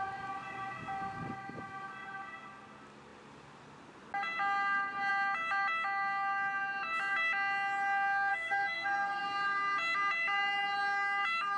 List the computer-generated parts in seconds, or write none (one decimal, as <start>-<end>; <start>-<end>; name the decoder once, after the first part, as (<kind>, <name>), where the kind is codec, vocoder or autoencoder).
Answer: 8.3-9.2 (codec, SNAC)